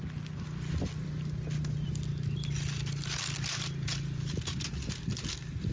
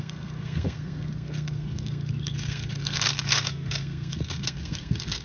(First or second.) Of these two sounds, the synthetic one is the second